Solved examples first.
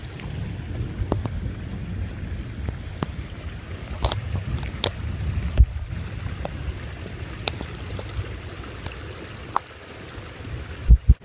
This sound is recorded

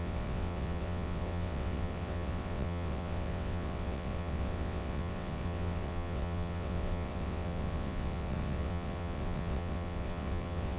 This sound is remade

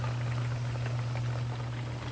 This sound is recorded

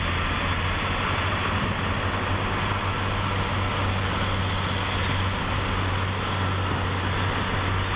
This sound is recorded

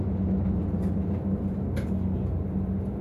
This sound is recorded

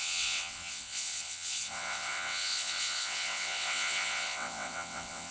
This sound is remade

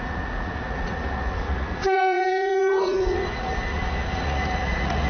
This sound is remade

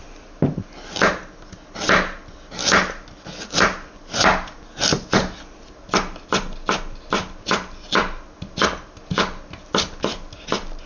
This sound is recorded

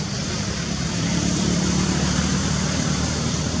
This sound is remade